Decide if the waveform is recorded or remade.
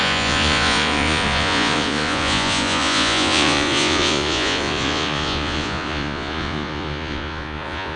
remade